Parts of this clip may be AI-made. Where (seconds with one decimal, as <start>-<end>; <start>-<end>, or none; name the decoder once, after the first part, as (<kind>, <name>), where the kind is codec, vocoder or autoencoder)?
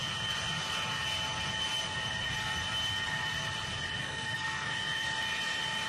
4.0-4.7 (codec, SNAC)